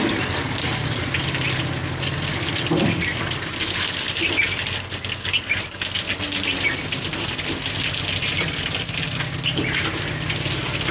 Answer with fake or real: real